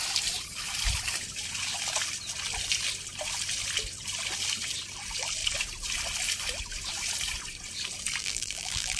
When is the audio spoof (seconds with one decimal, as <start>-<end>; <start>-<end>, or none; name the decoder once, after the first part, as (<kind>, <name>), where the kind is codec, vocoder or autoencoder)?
8.2-9.0 (vocoder, BigVGAN v2)